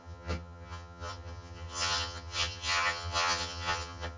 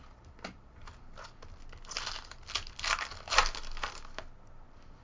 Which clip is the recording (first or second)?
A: second